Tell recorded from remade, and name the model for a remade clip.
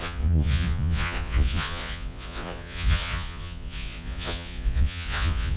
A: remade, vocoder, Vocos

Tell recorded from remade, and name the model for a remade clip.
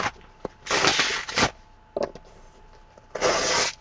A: recorded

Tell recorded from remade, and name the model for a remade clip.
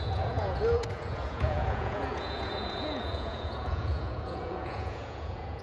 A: remade, vocoder, Vocos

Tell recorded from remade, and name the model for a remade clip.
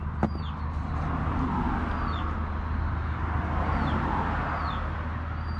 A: recorded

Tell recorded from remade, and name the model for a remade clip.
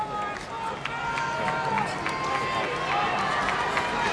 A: recorded